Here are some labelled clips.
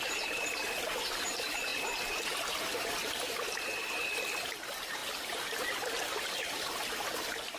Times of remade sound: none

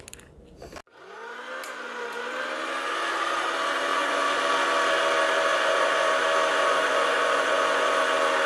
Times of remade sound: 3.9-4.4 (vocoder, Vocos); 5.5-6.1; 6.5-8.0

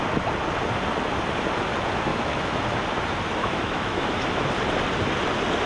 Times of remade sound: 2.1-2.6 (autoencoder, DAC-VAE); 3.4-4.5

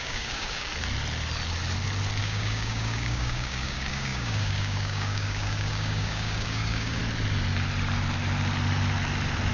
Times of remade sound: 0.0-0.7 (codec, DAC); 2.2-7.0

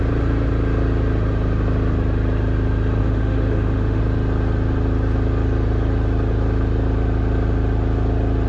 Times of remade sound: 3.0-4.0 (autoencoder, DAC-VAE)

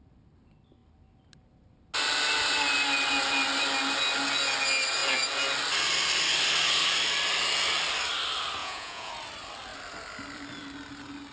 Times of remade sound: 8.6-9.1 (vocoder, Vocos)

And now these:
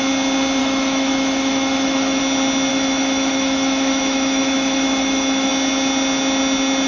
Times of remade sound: 0.6-2.2 (autoencoder, DAC-VAE); 2.7-5.5